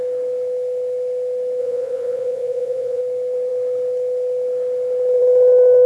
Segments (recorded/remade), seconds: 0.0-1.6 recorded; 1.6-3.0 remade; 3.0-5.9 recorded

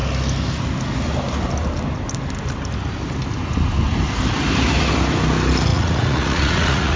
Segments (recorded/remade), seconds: 0.0-5.7 recorded; 5.7-7.0 remade

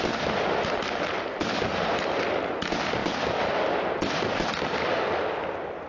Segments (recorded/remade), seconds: 0.0-5.9 recorded

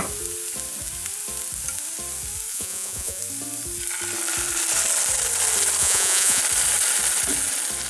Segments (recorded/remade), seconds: 0.0-2.5 recorded; 2.5-3.2 remade; 3.2-5.8 recorded; 5.8-6.4 remade; 6.4-7.9 recorded

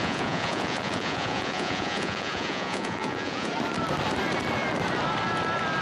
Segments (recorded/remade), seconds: 0.0-3.5 remade; 3.5-5.8 recorded

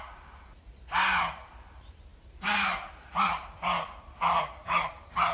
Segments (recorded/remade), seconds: 0.0-5.3 recorded

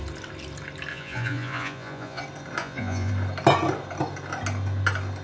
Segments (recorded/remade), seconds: 0.0-0.9 recorded; 0.9-2.2 remade; 2.2-2.6 recorded; 2.6-3.1 remade; 3.1-5.2 recorded